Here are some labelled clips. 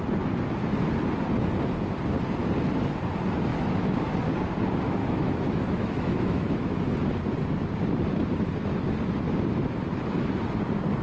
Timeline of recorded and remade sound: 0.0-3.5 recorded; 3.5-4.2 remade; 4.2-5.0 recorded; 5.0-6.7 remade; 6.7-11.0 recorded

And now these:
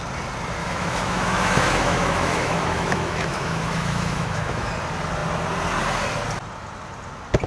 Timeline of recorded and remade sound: 0.0-0.6 recorded; 0.6-4.7 remade; 4.7-7.5 recorded